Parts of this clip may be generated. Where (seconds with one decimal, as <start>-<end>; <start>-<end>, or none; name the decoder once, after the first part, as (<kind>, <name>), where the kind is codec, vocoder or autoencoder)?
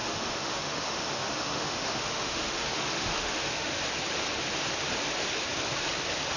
0.0-3.8 (autoencoder, DAC-VAE)